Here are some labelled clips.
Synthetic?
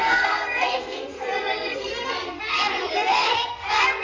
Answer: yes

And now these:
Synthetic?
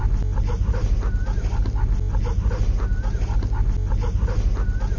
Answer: no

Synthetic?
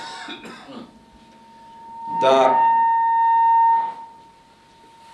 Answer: no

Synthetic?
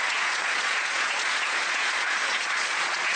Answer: yes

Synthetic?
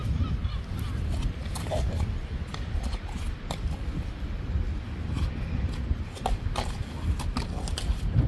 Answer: no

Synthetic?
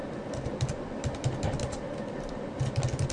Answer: no